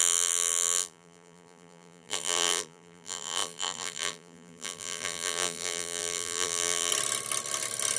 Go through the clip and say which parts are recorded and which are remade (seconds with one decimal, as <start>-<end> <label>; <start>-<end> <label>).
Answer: 0.0-6.9 remade; 6.9-8.0 recorded